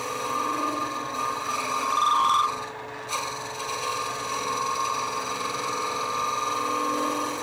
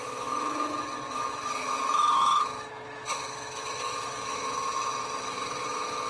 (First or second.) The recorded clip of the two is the first